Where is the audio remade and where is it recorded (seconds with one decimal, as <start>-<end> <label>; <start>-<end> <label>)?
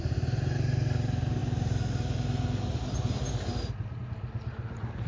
0.0-5.1 recorded